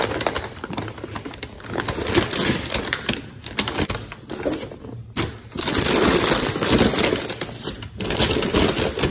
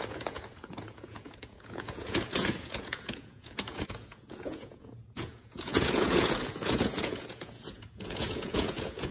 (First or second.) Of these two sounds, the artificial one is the second